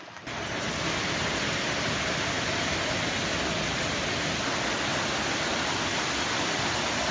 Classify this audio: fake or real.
real